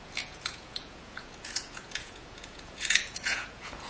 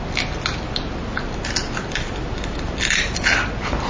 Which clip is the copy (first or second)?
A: first